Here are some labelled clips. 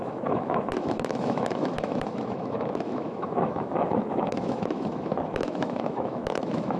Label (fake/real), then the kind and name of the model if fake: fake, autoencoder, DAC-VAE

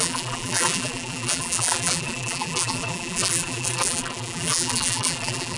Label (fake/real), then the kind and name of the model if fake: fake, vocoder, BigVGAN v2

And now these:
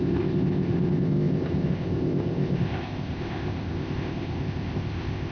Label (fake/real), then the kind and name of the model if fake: fake, codec, ZipCodec